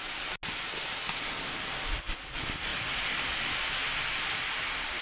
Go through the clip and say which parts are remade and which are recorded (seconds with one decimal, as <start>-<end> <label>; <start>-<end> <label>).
0.0-0.9 recorded; 0.9-2.3 remade; 2.3-5.0 recorded